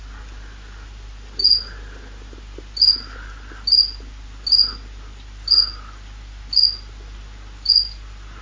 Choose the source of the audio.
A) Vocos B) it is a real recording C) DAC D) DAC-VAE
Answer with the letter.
B